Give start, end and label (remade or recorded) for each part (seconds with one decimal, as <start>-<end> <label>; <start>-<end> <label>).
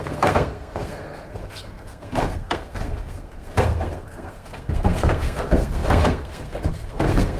0.0-7.4 remade